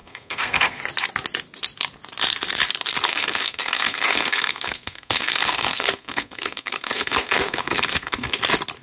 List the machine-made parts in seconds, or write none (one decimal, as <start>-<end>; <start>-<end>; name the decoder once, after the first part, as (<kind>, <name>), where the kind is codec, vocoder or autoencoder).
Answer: 0.0-0.8 (codec, SNAC); 3.1-8.4